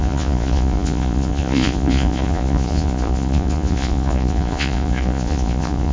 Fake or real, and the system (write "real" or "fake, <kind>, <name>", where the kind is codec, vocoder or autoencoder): fake, vocoder, Vocos